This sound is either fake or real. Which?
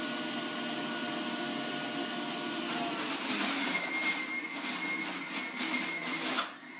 real